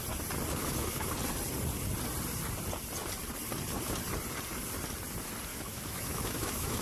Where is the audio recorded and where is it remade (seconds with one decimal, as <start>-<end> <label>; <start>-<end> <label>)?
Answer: 0.0-0.6 recorded; 0.6-1.1 remade; 1.1-5.5 recorded; 5.5-6.8 remade